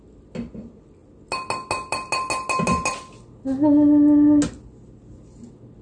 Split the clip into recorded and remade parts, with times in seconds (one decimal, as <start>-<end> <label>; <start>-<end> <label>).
0.0-5.8 recorded